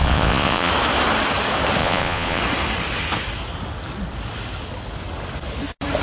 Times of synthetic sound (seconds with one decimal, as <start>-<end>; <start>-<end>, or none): 0.0-0.7; 1.8-2.4